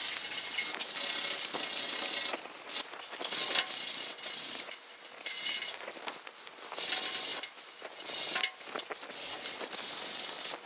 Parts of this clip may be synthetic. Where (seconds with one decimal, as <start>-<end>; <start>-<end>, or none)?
none